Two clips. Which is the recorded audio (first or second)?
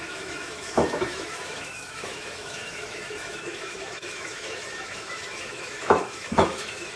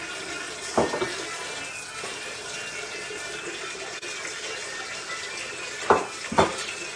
second